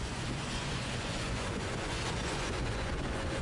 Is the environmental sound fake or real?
fake